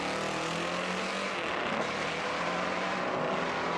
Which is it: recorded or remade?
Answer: recorded